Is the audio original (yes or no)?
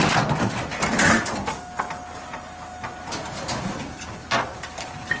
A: yes